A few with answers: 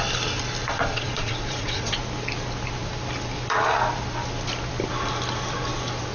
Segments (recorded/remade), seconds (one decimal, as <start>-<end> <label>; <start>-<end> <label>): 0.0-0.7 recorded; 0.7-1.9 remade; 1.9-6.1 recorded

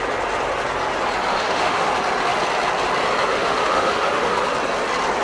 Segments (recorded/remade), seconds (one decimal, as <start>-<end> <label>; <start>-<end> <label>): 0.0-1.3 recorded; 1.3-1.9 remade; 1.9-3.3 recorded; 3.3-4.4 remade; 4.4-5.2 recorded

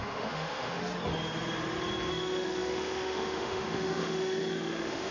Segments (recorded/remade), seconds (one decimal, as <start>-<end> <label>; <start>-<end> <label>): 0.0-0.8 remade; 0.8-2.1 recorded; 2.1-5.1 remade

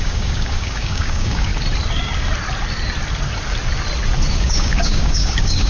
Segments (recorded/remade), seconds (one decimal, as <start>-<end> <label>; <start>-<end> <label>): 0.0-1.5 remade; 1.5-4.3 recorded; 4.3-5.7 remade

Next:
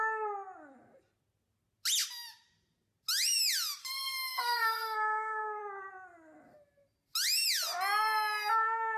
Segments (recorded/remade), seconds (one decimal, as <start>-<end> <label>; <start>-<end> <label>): 0.0-3.8 recorded; 3.8-5.6 remade; 5.6-9.0 recorded

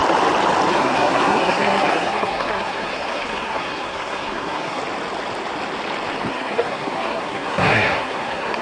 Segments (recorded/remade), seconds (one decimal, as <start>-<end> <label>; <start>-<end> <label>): 0.0-0.7 recorded; 0.7-4.8 remade; 4.8-6.3 recorded; 6.3-8.6 remade